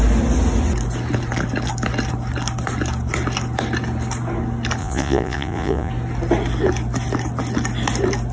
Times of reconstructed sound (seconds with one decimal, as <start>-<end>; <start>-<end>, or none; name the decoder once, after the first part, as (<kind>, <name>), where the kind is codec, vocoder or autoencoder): 4.8-5.9 (vocoder, Vocos)